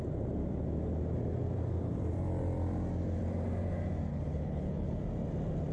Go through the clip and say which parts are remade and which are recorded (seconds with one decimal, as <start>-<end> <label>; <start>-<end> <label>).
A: 0.0-4.1 recorded; 4.1-5.0 remade; 5.0-5.7 recorded